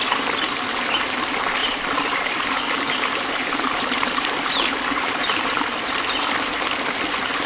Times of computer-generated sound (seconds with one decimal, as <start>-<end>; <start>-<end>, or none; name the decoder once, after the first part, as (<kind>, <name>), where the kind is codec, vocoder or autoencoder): 1.6-6.0 (vocoder, BigVGAN v2)